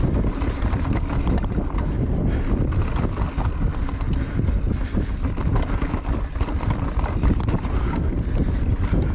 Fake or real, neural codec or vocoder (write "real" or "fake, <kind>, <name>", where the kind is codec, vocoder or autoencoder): real